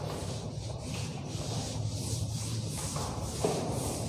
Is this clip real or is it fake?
fake